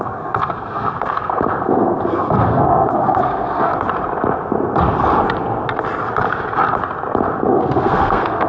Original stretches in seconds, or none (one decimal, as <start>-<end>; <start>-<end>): 3.7-7.5